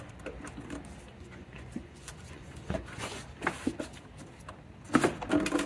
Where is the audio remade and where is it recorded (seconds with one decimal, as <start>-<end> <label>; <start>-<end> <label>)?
0.0-1.1 recorded; 1.1-3.2 remade; 3.2-5.7 recorded